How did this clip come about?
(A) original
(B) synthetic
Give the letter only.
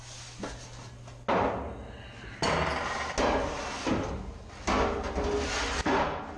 A